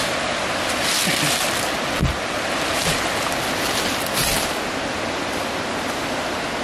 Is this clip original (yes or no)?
yes